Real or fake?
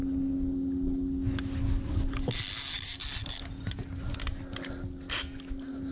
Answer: real